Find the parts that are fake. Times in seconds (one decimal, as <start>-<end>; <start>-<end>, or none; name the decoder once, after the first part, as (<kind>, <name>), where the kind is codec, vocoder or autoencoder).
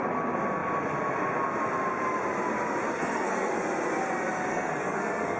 2.9-3.5 (codec, SNAC); 4.5-5.4